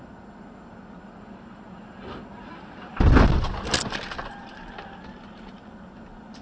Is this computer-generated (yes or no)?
no